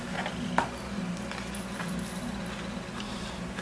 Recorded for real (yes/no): yes